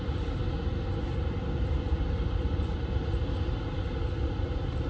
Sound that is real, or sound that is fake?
real